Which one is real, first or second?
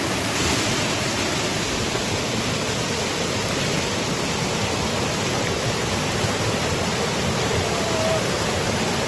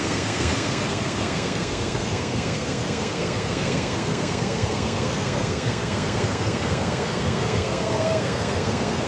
first